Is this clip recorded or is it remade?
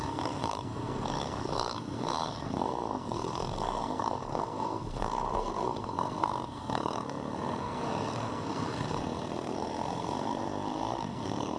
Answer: remade